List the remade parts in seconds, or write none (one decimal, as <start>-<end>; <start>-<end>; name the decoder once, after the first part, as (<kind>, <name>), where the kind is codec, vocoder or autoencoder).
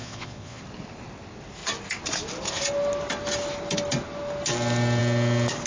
0.0-0.6 (vocoder, Vocos)